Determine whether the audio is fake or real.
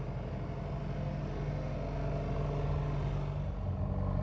real